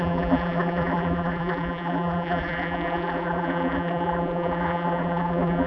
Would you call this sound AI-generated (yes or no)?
yes